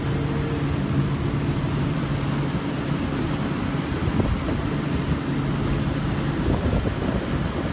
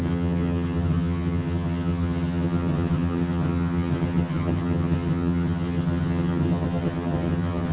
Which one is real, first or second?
first